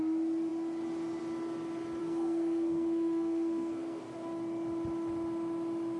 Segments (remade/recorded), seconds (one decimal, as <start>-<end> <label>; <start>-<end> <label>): 0.0-2.0 recorded; 2.0-4.0 remade; 4.0-6.0 recorded